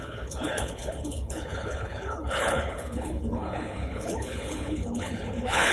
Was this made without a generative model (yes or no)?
no